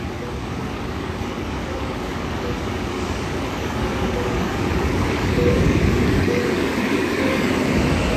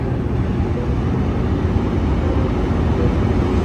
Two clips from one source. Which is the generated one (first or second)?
first